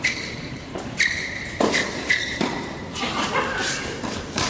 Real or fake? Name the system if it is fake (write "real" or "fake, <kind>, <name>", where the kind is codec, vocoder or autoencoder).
fake, vocoder, BigVGAN v2